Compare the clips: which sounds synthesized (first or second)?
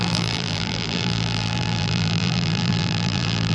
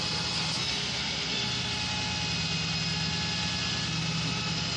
first